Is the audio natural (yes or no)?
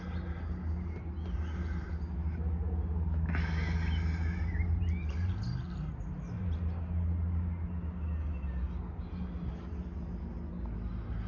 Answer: yes